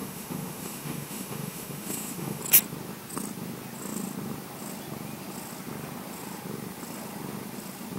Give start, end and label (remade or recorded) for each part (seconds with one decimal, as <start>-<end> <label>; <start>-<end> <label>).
0.0-2.4 remade; 2.4-8.0 recorded